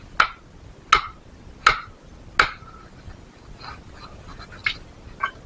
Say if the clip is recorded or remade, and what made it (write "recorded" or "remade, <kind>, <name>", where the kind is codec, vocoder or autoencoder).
recorded